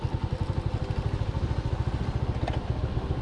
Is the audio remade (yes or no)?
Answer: no